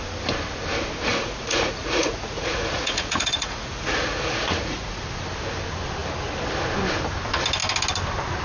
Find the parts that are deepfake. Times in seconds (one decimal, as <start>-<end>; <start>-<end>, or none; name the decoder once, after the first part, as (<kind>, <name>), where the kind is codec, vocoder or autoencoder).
1.1-5.0 (vocoder, Vocos)